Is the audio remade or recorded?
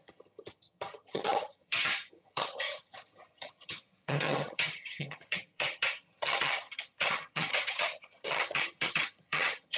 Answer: remade